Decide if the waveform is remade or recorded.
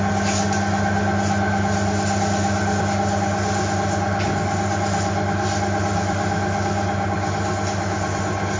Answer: recorded